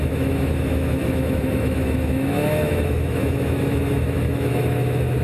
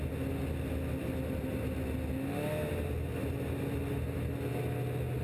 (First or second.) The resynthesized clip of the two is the first